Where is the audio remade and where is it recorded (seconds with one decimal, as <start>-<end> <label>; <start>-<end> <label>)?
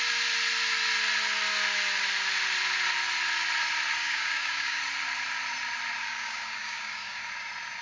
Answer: 0.0-4.0 recorded; 4.0-4.8 remade; 4.8-6.0 recorded; 6.0-7.2 remade; 7.2-7.8 recorded